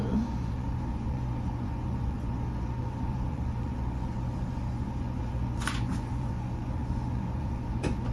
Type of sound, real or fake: fake